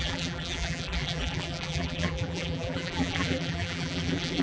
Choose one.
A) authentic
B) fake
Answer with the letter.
B